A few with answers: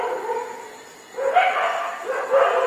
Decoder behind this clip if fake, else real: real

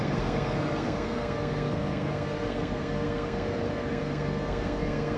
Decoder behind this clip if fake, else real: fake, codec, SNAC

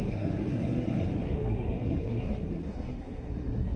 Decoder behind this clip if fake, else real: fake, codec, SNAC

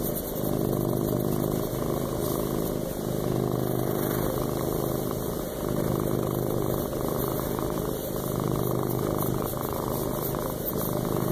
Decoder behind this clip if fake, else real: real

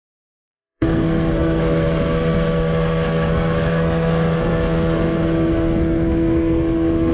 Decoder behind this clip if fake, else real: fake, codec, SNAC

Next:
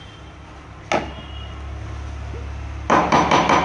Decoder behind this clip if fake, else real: real